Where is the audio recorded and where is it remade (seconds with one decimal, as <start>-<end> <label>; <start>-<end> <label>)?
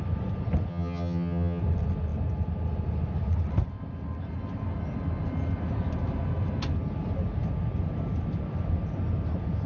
0.0-0.7 recorded; 0.7-1.6 remade; 1.6-9.7 recorded